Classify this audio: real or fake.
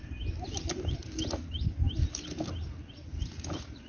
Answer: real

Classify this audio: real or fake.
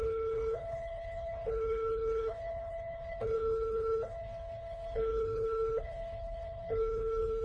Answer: fake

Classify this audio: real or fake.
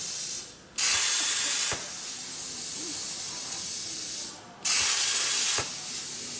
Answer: real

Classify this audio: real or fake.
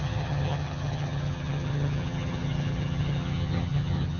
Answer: fake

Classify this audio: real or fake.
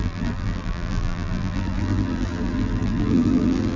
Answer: fake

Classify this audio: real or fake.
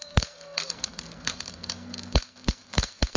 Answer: fake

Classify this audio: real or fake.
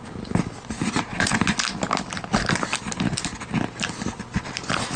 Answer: real